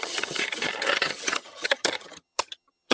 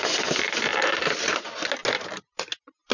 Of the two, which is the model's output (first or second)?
first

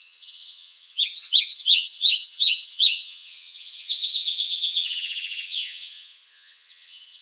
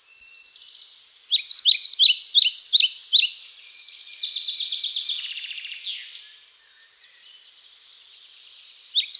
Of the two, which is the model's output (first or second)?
first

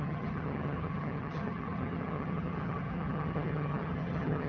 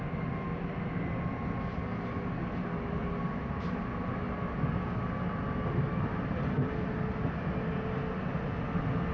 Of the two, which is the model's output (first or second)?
first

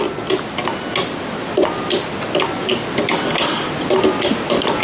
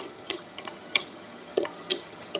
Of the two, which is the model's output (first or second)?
second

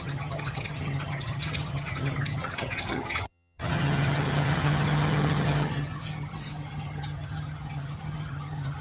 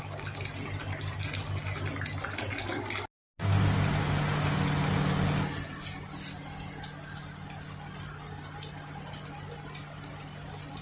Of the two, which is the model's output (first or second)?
first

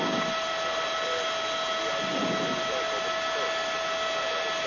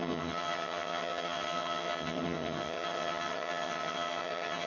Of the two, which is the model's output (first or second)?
second